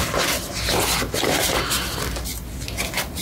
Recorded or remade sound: recorded